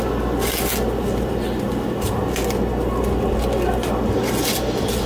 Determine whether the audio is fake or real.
real